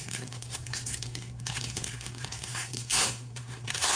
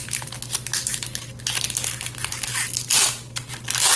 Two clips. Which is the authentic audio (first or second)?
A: second